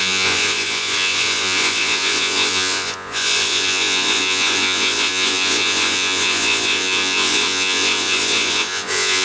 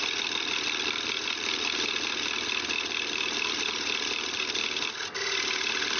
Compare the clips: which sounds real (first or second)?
second